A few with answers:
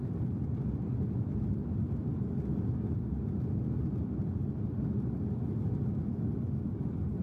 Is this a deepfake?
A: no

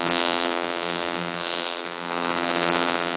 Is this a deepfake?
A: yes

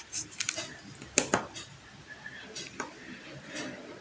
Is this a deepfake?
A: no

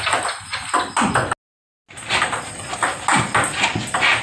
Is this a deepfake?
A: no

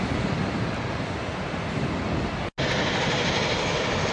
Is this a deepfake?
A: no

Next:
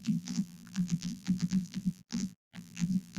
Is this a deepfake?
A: yes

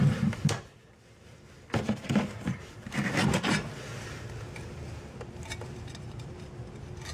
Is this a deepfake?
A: no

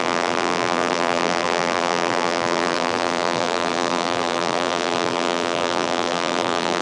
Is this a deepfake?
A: yes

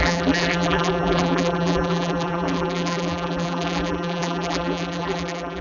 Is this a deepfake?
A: yes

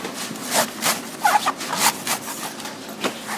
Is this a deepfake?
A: no